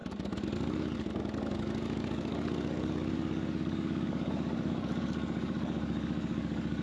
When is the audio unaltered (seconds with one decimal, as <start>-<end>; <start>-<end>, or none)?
none